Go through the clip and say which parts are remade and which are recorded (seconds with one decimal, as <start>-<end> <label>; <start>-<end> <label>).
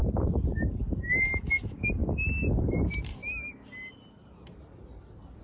0.0-2.0 remade; 2.0-2.6 recorded; 2.6-3.2 remade; 3.2-5.4 recorded